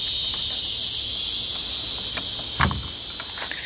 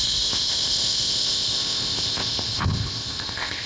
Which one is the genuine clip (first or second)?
first